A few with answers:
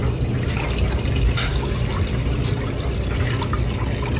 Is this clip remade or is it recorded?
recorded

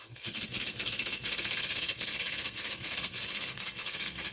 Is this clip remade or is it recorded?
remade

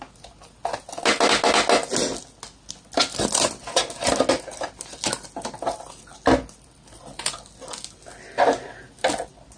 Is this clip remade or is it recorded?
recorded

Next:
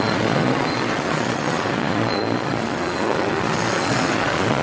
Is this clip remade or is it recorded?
remade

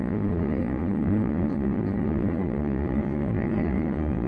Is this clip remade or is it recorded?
remade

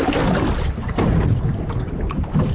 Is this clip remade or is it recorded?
recorded